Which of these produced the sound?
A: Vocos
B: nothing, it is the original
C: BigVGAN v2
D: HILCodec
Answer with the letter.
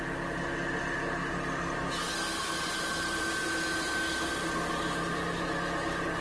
B